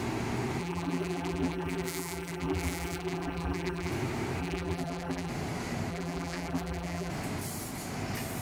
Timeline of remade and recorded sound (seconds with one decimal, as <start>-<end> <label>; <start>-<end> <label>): 0.0-0.6 recorded; 0.6-3.9 remade; 3.9-4.4 recorded; 4.4-5.3 remade; 5.3-5.9 recorded; 5.9-7.1 remade; 7.1-8.4 recorded